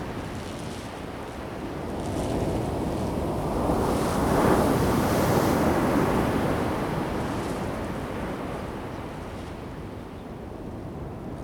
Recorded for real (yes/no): yes